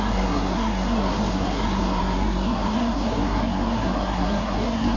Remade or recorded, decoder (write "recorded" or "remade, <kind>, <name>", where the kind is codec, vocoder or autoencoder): remade, codec, SNAC